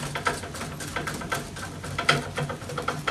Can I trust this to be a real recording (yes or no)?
yes